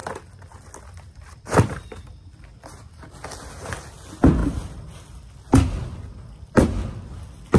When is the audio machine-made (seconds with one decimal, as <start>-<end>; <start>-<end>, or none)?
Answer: none